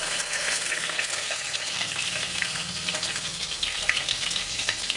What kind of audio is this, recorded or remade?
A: remade